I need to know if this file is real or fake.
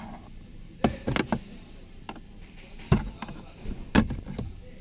real